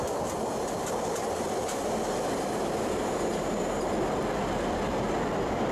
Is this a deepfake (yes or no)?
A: no